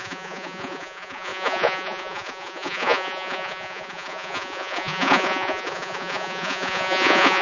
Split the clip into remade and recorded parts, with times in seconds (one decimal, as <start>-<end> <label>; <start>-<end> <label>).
0.0-7.4 remade